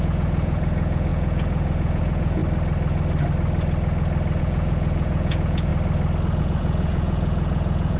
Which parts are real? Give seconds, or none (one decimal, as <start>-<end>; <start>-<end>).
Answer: 2.4-4.4; 5.7-6.4